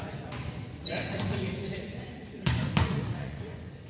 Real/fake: fake